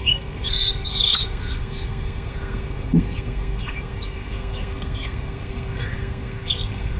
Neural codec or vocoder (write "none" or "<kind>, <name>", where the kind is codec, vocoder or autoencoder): codec, SNAC